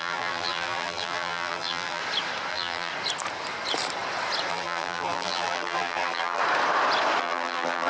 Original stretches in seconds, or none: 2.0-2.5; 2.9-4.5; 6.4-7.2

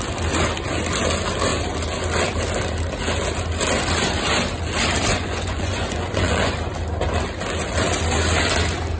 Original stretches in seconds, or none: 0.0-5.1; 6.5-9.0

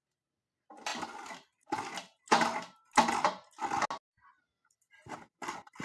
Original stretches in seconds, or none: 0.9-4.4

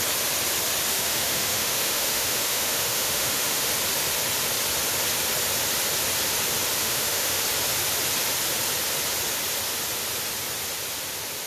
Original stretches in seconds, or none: 0.0-0.9; 3.7-6.8; 7.4-11.5